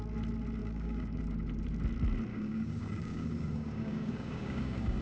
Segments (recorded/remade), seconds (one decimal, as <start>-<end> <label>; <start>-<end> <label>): 0.0-0.6 recorded; 0.6-1.2 remade; 1.2-2.3 recorded; 2.3-5.0 remade